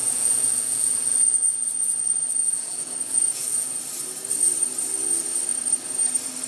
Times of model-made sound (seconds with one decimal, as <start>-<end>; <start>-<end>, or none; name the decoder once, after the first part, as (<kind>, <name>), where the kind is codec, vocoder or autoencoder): 0.0-3.8 (vocoder, Vocos)